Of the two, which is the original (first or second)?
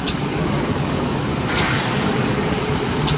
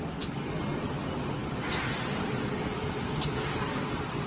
second